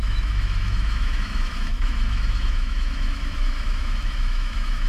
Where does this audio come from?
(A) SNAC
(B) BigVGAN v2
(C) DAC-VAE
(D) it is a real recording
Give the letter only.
C